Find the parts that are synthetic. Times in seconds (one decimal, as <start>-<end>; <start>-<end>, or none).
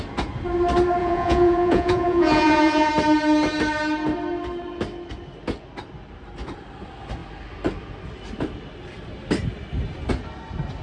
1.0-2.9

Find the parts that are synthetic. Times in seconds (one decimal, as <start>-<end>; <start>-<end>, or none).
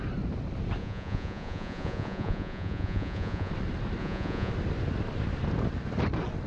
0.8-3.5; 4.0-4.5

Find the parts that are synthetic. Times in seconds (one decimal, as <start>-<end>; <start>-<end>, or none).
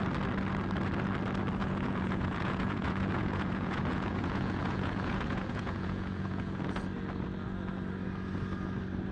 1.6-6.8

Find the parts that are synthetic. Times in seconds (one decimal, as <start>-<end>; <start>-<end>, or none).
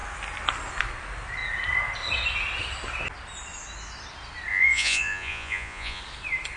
4.5-6.0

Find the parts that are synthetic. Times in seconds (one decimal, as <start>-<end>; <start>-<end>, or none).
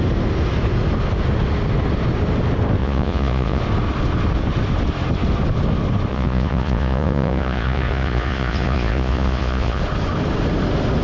2.8-3.6; 6.1-9.8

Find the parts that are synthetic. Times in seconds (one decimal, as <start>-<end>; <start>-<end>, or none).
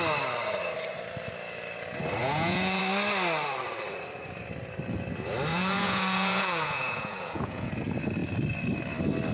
2.2-2.8; 5.5-7.7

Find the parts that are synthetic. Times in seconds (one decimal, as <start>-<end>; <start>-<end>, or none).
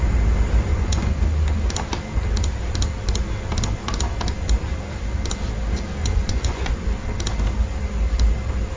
0.7-1.2; 6.0-6.7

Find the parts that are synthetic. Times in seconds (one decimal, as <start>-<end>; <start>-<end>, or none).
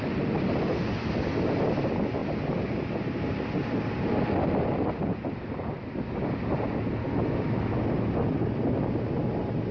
none